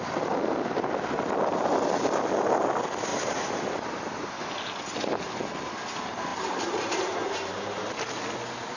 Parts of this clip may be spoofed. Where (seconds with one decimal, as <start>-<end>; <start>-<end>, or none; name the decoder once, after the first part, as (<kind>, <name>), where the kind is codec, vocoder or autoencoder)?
3.1-4.3 (vocoder, BigVGAN v2); 6.3-8.3